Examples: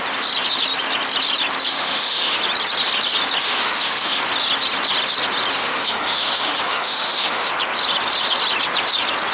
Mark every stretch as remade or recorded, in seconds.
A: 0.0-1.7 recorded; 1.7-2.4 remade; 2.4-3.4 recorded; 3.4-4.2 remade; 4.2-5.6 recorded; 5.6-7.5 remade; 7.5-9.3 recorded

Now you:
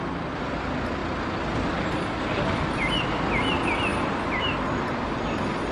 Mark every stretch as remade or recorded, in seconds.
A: 0.0-5.7 recorded

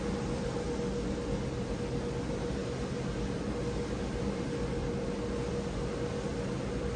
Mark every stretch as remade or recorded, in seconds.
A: 0.0-7.0 recorded

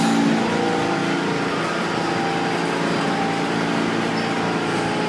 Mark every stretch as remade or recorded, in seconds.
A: 0.0-5.1 recorded

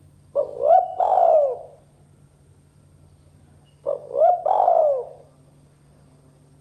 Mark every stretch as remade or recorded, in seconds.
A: 0.0-6.6 recorded